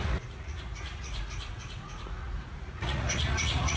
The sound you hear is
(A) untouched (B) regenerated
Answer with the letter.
B